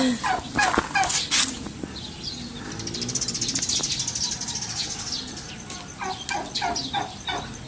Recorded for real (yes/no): yes